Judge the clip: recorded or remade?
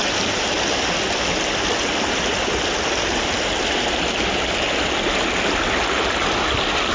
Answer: recorded